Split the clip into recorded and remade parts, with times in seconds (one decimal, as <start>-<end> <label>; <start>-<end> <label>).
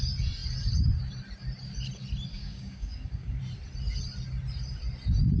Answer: 0.0-2.3 recorded; 2.3-3.4 remade; 3.4-5.4 recorded